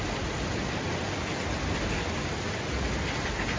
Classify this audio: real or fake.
real